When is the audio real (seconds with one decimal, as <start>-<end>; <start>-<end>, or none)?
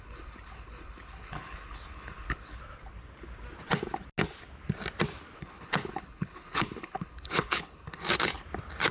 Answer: 2.6-5.4; 8.0-8.9